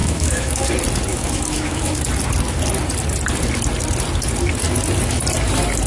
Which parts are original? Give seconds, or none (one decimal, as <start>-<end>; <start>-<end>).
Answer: 0.7-1.1; 2.0-5.9